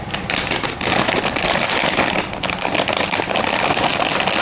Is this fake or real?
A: real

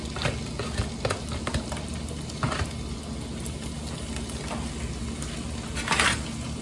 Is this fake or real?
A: real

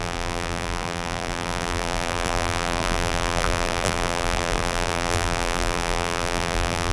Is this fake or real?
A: fake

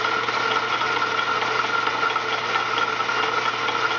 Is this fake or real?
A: real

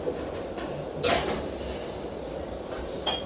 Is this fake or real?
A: real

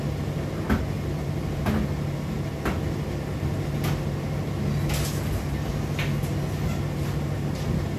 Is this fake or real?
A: real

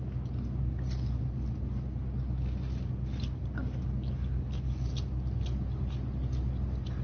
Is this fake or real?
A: real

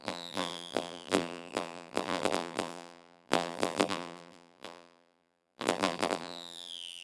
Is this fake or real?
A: fake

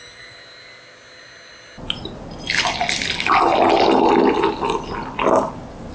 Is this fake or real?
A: real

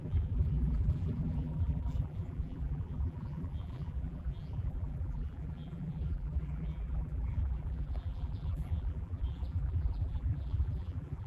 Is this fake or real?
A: fake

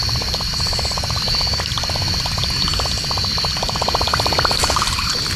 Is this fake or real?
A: real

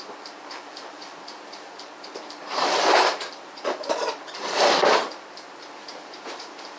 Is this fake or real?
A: fake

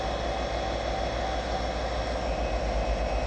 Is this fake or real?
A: real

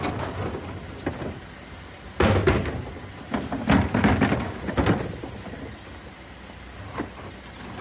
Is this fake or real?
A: real